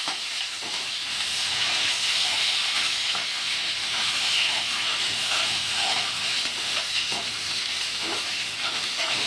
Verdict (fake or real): fake